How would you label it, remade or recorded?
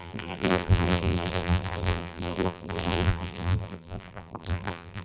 remade